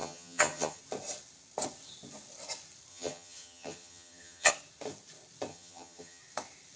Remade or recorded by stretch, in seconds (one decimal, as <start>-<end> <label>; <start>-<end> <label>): 0.0-0.8 remade; 0.8-2.9 recorded; 2.9-4.5 remade; 4.5-5.5 recorded; 5.5-6.2 remade; 6.2-6.8 recorded